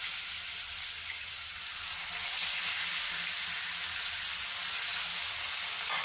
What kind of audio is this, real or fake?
real